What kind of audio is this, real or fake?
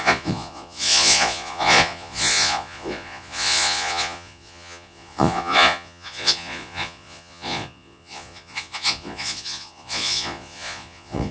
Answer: fake